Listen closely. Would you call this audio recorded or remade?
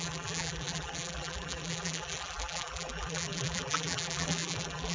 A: remade